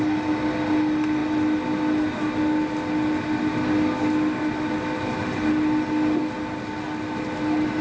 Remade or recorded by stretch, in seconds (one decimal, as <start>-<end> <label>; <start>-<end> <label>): 0.0-7.8 recorded